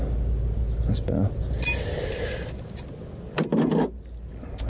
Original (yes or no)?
yes